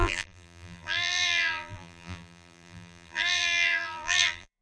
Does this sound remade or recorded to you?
remade